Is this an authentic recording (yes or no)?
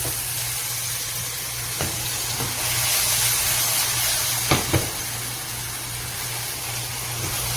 yes